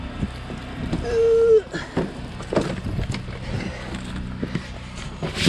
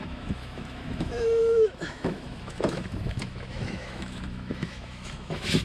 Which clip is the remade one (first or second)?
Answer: second